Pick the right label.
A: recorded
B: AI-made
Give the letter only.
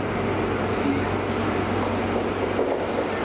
A